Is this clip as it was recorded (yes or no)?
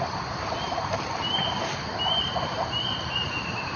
yes